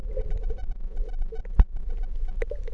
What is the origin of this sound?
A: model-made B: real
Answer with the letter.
B